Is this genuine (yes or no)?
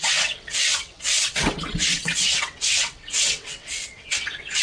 no